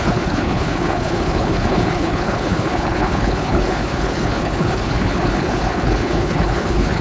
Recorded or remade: remade